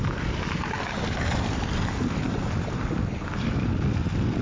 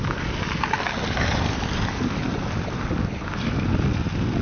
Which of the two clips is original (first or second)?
second